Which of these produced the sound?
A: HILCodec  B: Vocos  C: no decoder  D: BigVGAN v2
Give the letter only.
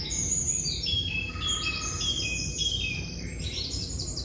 D